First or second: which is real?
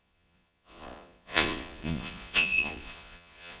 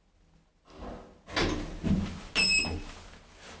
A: second